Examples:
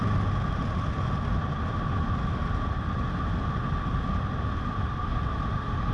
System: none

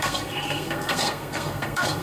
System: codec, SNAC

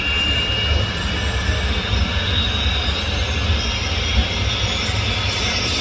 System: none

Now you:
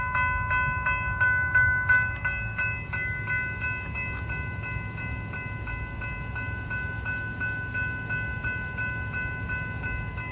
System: none